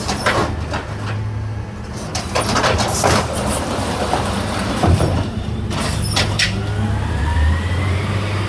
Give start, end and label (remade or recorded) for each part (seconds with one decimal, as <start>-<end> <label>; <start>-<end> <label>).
0.0-0.4 remade; 0.4-3.5 recorded; 3.5-5.9 remade; 5.9-7.1 recorded; 7.1-8.5 remade

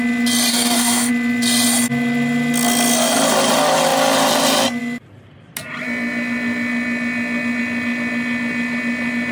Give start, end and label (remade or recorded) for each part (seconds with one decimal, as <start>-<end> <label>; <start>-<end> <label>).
0.0-0.5 recorded; 0.5-1.1 remade; 1.1-9.3 recorded

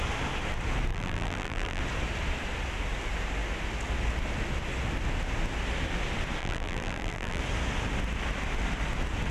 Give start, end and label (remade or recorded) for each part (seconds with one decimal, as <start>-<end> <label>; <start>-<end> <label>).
0.0-0.9 recorded; 0.9-1.8 remade; 1.8-6.4 recorded; 6.4-7.4 remade; 7.4-9.3 recorded

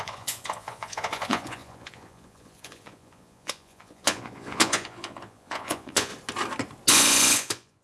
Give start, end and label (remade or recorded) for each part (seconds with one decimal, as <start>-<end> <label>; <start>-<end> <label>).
0.0-6.1 remade; 6.1-6.9 recorded; 6.9-7.8 remade

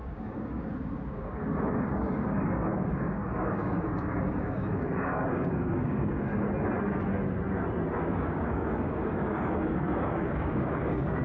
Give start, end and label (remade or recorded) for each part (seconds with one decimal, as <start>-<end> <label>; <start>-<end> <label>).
0.0-6.3 remade; 6.3-8.0 recorded; 8.0-11.2 remade

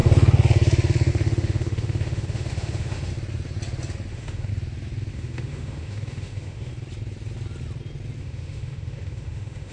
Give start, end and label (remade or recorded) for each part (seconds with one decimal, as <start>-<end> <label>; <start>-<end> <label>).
0.0-1.1 recorded; 1.1-3.1 remade; 3.1-4.1 recorded; 4.1-4.5 remade; 4.5-5.1 recorded; 5.1-6.7 remade; 6.7-8.2 recorded; 8.2-9.7 remade

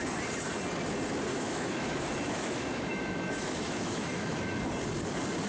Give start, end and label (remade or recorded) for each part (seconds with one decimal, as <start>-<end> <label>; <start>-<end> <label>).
0.0-1.3 recorded; 1.3-4.6 remade; 4.6-5.5 recorded